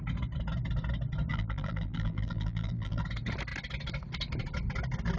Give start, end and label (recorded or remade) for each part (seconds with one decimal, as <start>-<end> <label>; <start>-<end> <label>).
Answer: 0.0-1.3 recorded; 1.3-3.0 remade; 3.0-5.2 recorded